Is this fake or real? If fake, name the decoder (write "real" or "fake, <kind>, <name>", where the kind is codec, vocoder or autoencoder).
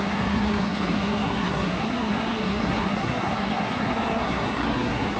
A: fake, codec, SNAC